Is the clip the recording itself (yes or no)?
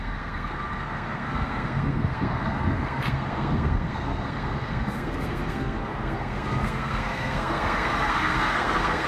no